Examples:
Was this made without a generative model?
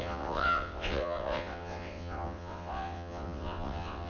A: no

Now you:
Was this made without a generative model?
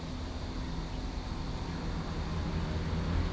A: yes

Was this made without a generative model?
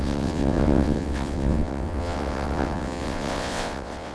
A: no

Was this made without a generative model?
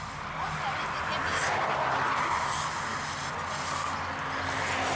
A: yes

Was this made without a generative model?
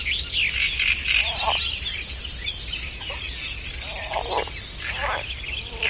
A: yes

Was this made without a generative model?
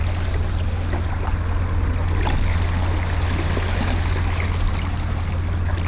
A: yes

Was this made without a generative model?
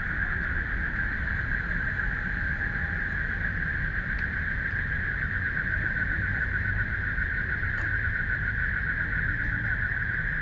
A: yes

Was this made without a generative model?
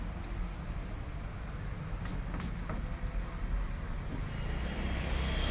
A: yes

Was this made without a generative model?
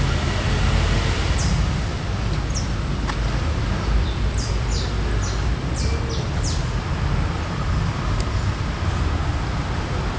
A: yes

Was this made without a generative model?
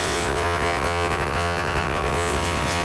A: no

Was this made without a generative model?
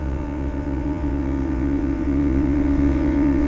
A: no